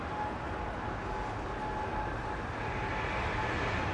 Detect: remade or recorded recorded